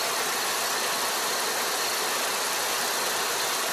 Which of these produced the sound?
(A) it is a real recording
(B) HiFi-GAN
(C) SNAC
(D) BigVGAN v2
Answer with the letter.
A